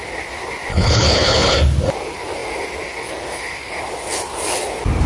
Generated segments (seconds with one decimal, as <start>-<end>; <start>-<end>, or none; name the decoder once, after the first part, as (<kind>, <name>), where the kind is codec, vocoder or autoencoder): 0.7-1.5 (codec, HILCodec)